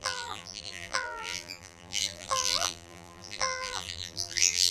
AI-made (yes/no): yes